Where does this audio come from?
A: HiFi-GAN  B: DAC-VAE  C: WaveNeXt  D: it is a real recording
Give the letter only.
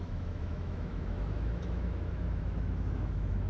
B